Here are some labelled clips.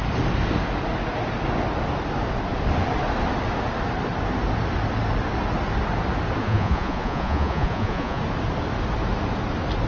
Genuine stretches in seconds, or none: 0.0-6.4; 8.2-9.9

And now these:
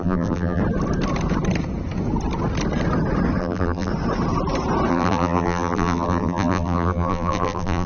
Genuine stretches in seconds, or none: 0.6-3.4; 3.9-4.9

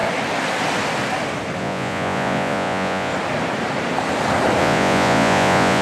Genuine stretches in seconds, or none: 0.0-1.6; 3.1-4.6

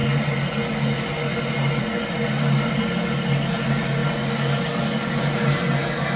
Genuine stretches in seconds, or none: 0.0-4.0; 4.6-6.2

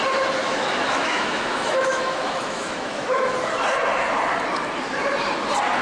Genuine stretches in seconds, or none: 0.0-0.4; 3.3-5.8

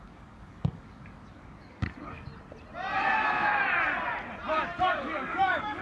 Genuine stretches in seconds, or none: 2.3-4.8